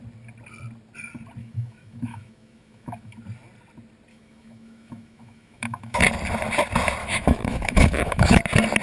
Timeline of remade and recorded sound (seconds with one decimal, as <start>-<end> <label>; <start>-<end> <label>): 0.0-1.4 recorded; 1.4-3.2 remade; 3.2-4.1 recorded; 4.1-6.0 remade; 6.0-7.0 recorded; 7.0-8.4 remade; 8.4-8.8 recorded